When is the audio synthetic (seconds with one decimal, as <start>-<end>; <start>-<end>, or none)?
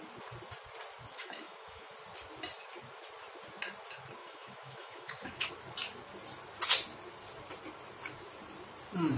1.1-1.9; 4.2-5.5